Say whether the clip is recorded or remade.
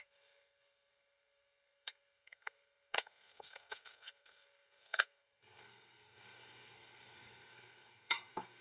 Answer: remade